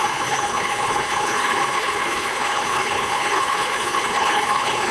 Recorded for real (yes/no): no